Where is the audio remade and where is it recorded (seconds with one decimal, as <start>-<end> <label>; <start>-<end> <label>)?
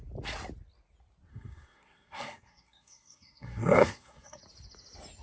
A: 0.0-1.3 recorded; 1.3-4.4 remade; 4.4-5.2 recorded